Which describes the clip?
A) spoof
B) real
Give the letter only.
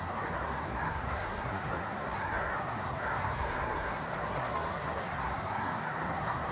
A